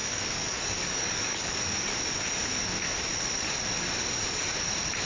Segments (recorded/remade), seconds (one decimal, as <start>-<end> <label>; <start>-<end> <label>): 0.0-1.8 remade; 1.8-5.1 recorded